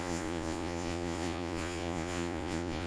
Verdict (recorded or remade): remade